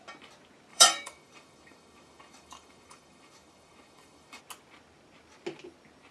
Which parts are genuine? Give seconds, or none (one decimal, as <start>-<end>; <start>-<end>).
0.0-0.7; 4.4-6.1